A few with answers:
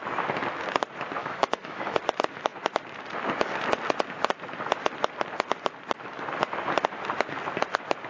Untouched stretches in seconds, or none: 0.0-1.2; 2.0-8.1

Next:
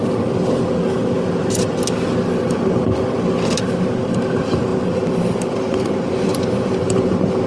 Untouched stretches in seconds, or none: 0.0-7.5

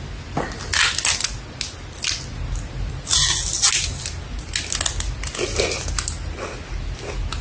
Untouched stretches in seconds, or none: 0.0-7.4

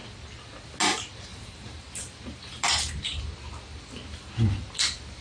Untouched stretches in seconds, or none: 0.0-1.3; 2.9-5.2